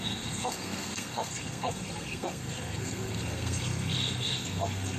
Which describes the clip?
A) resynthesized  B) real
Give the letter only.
A